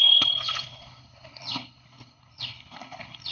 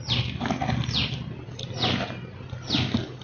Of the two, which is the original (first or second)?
second